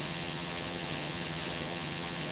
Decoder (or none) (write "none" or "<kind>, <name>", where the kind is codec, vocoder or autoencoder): vocoder, HiFi-GAN